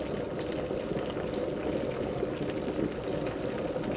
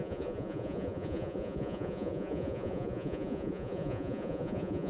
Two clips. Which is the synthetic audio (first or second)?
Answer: second